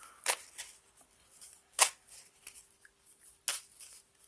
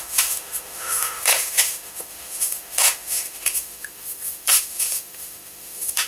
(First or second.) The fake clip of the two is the second